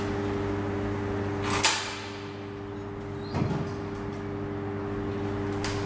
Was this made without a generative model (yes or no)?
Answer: yes